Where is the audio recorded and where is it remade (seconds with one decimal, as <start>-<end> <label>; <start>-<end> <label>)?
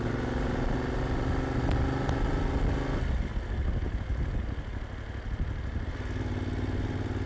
0.0-7.3 recorded